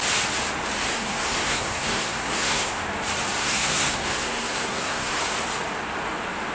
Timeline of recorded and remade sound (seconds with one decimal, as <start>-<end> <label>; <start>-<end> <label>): 0.0-0.9 recorded; 0.9-2.8 remade; 2.8-3.4 recorded; 3.4-5.2 remade; 5.2-6.5 recorded